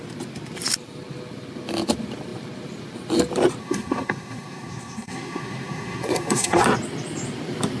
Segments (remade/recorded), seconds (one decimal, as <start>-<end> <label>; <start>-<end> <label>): 0.0-3.6 recorded; 3.6-6.6 remade; 6.6-7.8 recorded